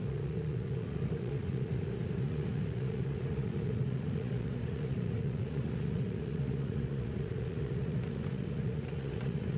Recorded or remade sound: remade